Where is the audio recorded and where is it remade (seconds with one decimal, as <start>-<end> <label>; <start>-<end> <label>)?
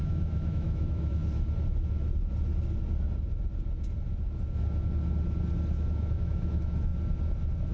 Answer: 0.0-1.2 remade; 1.2-5.7 recorded; 5.7-6.9 remade; 6.9-7.7 recorded